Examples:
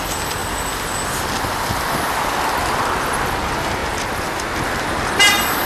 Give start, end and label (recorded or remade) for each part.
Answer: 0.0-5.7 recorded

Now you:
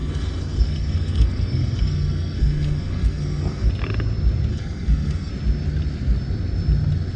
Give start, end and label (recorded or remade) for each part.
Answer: 0.0-3.7 remade; 3.7-4.5 recorded; 4.5-5.3 remade; 5.3-7.2 recorded

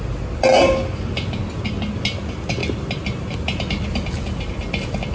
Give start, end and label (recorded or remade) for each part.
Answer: 0.0-5.1 recorded

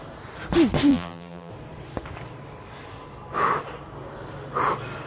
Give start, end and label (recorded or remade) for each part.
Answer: 0.0-0.9 recorded; 0.9-1.5 remade; 1.5-5.1 recorded

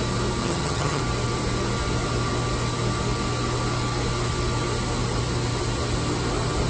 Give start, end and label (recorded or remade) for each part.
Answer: 0.0-0.4 recorded; 0.4-1.0 remade; 1.0-6.7 recorded